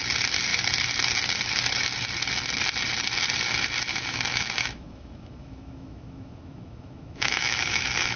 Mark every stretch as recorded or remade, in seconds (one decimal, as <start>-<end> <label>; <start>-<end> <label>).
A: 0.0-3.9 recorded; 3.9-8.2 remade